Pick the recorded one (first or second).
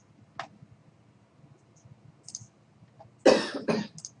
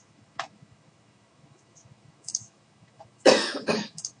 first